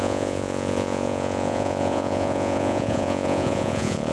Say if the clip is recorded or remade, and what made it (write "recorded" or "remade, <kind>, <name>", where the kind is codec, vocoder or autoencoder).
remade, vocoder, Vocos